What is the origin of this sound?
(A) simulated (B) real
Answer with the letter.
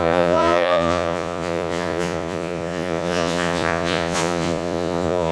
A